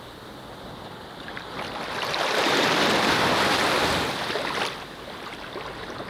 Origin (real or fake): real